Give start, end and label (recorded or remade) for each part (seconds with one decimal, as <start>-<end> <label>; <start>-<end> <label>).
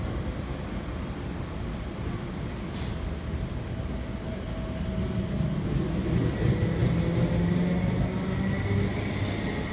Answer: 0.0-9.7 recorded